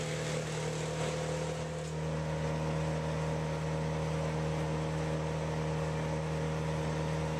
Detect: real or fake real